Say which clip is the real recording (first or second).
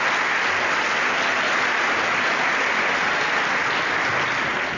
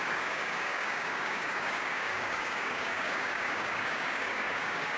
first